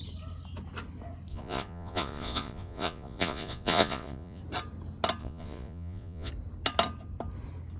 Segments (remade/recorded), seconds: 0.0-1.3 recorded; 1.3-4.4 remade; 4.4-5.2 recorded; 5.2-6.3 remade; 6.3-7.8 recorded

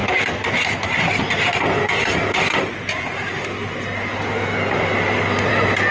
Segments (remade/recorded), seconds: 0.0-5.9 recorded